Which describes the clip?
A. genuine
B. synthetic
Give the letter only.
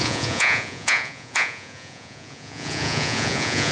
B